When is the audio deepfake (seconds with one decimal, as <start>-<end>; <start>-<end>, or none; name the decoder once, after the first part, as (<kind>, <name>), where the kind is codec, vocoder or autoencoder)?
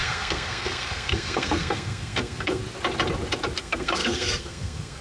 0.0-2.6 (codec, SNAC); 3.6-5.0